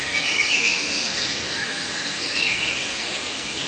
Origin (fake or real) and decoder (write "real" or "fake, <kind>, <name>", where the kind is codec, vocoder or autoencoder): fake, codec, SNAC